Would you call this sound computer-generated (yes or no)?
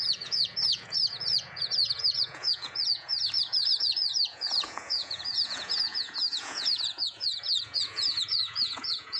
yes